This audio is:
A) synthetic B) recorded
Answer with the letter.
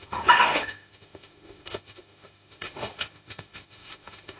A